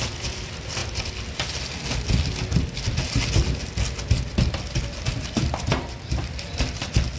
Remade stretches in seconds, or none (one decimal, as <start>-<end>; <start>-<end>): 0.0-0.8; 5.1-7.2